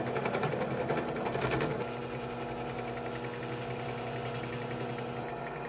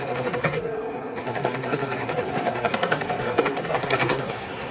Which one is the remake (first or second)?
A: second